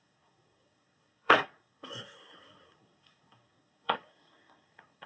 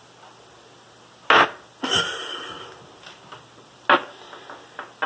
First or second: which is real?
second